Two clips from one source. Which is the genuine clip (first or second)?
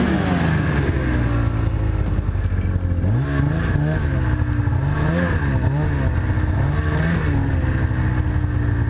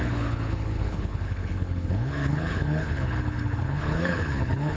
first